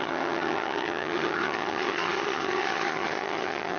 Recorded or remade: remade